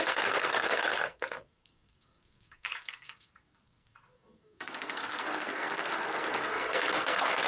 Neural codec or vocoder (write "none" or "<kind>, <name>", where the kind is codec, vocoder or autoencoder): codec, SNAC